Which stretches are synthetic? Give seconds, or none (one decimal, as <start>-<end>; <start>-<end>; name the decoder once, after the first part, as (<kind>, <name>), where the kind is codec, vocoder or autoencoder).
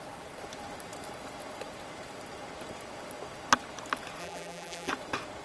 4.2-4.9 (vocoder, BigVGAN v2)